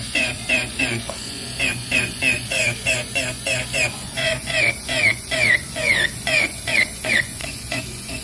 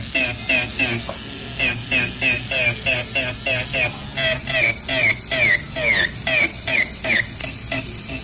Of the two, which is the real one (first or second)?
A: second